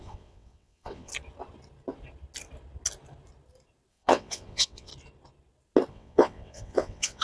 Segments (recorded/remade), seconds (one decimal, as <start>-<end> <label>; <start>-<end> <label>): 0.0-1.1 remade; 1.1-3.9 recorded; 3.9-4.9 remade; 4.9-5.9 recorded; 5.9-7.2 remade